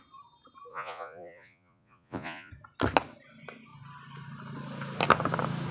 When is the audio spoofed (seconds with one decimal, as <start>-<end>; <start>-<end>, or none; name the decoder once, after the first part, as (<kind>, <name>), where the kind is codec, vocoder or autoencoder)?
0.7-2.5 (vocoder, Vocos)